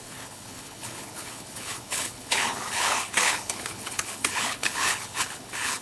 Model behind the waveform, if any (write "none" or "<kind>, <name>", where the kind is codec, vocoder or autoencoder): codec, HILCodec